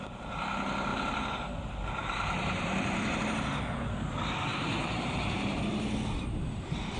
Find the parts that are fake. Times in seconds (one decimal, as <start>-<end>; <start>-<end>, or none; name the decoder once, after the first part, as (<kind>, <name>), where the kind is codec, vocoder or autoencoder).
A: 0.9-1.5 (vocoder, BigVGAN v2); 2.0-3.2; 4.5-5.6